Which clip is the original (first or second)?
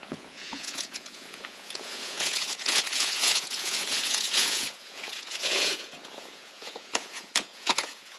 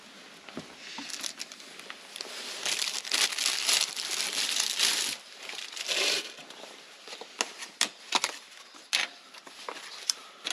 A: second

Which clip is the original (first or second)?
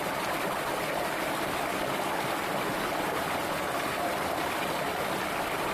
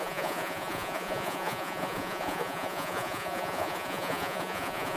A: first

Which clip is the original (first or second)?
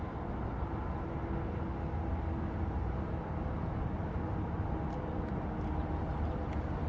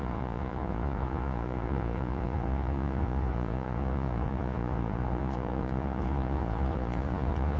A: first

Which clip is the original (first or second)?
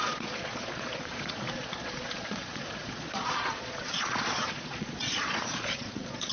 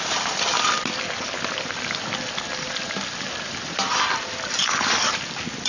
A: second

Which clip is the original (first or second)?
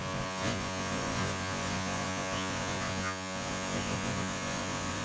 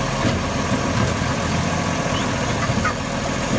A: second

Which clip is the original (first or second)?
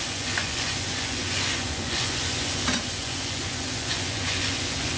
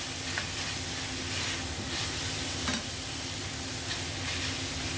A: second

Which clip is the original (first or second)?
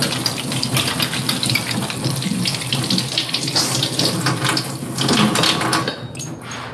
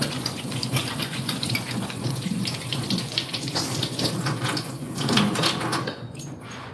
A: first